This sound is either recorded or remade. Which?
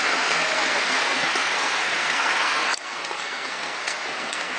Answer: remade